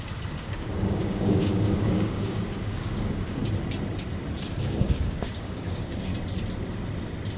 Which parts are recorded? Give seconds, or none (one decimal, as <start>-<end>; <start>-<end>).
3.4-4.6; 6.1-7.4